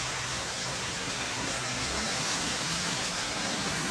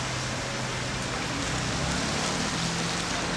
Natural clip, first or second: second